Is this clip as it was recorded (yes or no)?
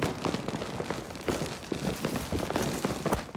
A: yes